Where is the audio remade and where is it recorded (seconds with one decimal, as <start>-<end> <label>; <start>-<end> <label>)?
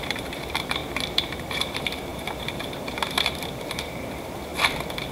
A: 0.0-4.5 remade; 4.5-5.1 recorded